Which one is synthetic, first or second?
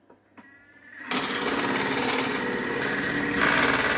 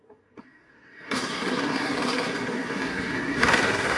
second